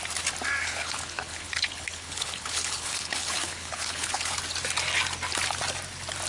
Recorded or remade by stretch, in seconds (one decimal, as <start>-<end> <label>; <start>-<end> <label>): 0.0-0.6 recorded; 0.6-4.4 remade; 4.4-6.3 recorded